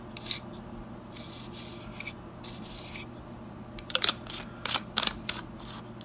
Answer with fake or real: real